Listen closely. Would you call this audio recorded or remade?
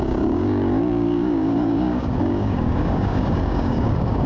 remade